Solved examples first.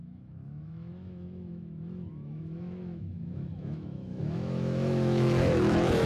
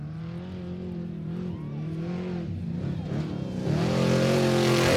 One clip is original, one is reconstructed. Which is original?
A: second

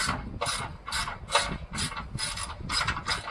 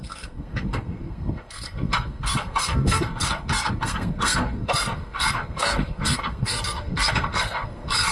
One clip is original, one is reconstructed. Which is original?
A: first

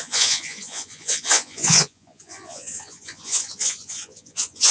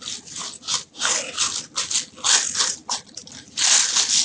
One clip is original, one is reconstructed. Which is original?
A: second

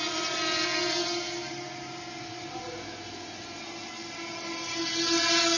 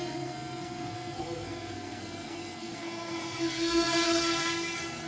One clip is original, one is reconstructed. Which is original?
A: first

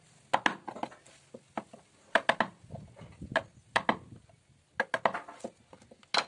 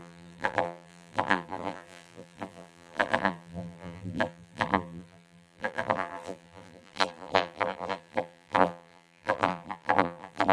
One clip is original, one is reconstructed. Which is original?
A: first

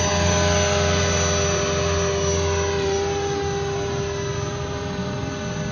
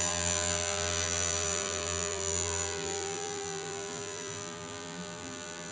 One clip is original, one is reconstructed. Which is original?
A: first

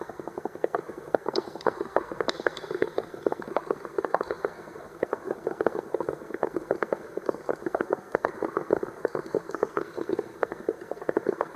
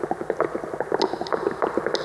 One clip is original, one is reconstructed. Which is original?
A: second